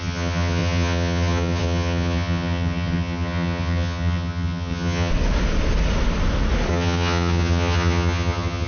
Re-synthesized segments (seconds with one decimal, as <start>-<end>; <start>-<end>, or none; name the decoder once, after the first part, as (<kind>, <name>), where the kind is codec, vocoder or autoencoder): 0.0-5.1 (vocoder, HiFi-GAN); 6.7-8.7